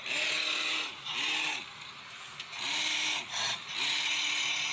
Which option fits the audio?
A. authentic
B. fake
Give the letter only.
A